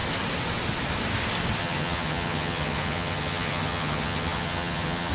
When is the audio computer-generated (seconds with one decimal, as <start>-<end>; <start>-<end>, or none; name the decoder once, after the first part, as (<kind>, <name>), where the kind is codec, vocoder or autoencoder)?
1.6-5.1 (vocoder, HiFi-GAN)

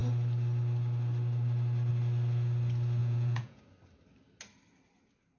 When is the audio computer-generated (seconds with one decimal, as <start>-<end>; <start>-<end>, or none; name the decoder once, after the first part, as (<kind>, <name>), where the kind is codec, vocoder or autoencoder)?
3.0-3.6 (vocoder, Vocos)

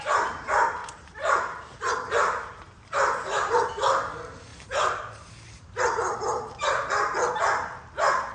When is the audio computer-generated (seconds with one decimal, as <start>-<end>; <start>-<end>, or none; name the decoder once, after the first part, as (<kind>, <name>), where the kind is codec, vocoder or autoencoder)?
0.8-3.7 (vocoder, BigVGAN v2); 4.5-6.9

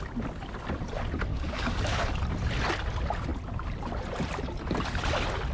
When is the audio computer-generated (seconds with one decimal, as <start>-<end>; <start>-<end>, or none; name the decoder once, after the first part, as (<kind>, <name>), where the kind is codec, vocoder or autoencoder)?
1.3-2.1 (codec, DAC)

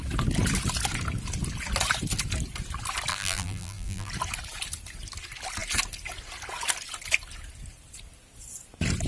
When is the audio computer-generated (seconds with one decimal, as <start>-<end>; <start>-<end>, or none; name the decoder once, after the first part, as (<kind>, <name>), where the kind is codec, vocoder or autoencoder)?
3.1-4.1 (vocoder, BigVGAN v2)

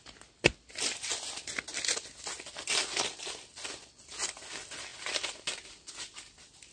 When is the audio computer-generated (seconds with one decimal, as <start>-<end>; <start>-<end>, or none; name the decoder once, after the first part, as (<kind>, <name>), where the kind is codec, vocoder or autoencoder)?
none

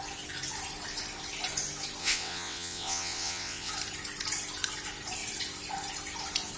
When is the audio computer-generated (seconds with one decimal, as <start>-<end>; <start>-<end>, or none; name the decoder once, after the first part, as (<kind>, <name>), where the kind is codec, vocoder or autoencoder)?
2.0-3.7 (vocoder, WaveNeXt)

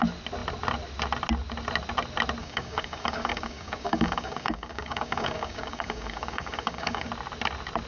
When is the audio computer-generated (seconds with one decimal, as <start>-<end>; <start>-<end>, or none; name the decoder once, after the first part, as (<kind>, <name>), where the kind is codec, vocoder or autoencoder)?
2.4-7.1 (codec, DAC)